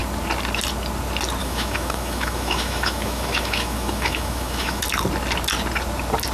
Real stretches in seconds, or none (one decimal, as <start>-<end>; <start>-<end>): 0.0-1.4; 4.8-6.3